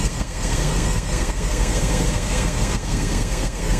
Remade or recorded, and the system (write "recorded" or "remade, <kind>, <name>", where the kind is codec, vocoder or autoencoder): remade, codec, SNAC